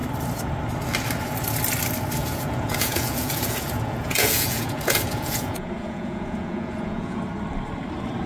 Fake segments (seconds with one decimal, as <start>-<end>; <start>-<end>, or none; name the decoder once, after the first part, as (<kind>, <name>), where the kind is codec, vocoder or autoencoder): 2.2-7.2 (vocoder, Vocos)